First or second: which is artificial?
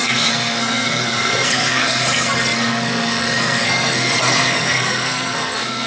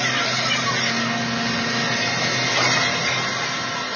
first